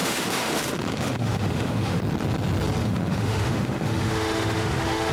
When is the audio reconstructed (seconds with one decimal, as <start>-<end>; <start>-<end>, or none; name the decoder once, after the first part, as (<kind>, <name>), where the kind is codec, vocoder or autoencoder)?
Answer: 0.0-2.0 (autoencoder, DAC-VAE); 2.8-5.1